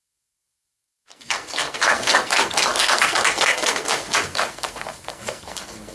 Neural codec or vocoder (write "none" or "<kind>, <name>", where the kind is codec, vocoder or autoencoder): codec, SNAC